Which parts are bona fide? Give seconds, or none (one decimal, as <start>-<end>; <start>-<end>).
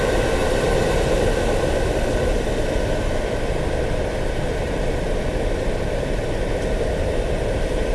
0.0-7.9